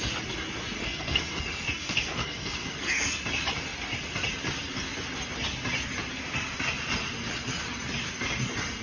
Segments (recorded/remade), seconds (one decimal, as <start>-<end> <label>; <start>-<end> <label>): 0.0-0.8 recorded; 0.8-3.2 remade; 3.2-8.8 recorded